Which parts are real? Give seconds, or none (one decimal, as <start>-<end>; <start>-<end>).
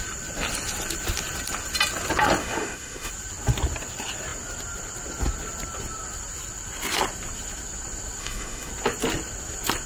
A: 0.0-2.4; 3.1-8.2; 8.7-9.9